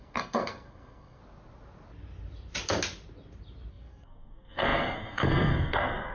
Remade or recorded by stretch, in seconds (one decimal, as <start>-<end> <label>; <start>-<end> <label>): 0.0-1.2 remade; 1.2-3.7 recorded; 3.7-6.1 remade